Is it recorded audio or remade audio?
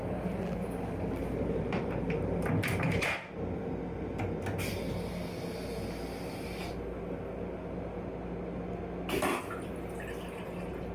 recorded